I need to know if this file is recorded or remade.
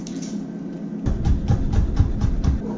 recorded